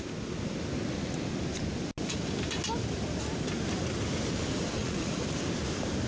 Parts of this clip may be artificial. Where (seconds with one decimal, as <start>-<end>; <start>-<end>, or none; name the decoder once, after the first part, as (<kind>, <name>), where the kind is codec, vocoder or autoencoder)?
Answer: 4.8-5.4 (vocoder, Vocos)